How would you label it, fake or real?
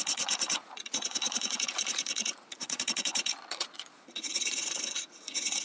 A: fake